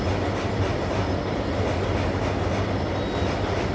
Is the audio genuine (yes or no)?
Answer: yes